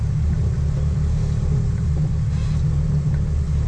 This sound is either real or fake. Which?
real